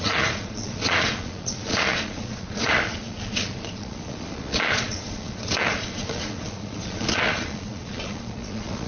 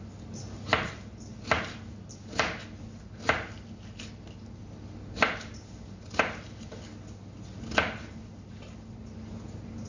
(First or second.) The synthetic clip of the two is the first